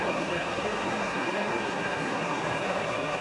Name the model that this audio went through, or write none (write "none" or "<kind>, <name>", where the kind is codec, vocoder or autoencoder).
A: codec, SNAC